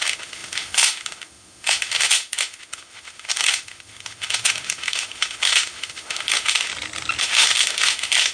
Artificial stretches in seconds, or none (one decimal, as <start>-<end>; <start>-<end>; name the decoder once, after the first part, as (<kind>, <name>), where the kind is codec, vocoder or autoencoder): 0.0-6.7 (autoencoder, DAC-VAE); 7.2-8.3